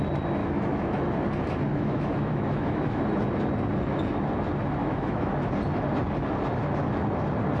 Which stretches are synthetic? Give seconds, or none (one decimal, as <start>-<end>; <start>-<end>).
0.4-0.9; 1.7-3.0; 4.8-5.5